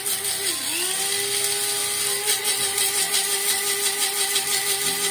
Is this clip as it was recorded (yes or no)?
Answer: yes